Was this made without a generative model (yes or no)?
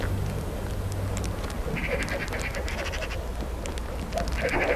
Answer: yes